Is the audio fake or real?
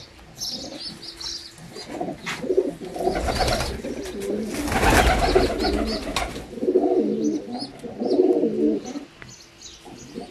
real